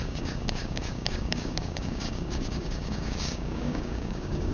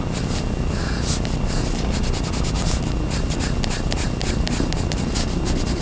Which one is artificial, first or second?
first